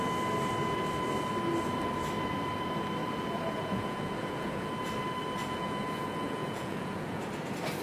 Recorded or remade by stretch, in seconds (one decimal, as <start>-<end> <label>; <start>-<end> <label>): 0.0-3.0 recorded; 3.0-4.7 remade; 4.7-5.4 recorded; 5.4-7.3 remade; 7.3-7.8 recorded

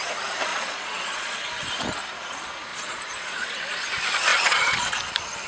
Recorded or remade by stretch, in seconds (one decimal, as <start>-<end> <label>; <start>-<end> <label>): 0.0-0.5 recorded; 0.5-1.5 remade; 1.5-2.7 recorded; 2.7-3.5 remade; 3.5-4.3 recorded; 4.3-4.9 remade; 4.9-5.5 recorded

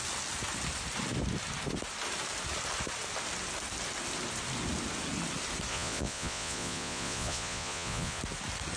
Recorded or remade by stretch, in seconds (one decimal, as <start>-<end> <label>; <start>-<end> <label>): 0.0-5.7 recorded; 5.7-8.2 remade; 8.2-8.8 recorded